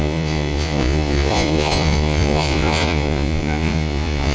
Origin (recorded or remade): remade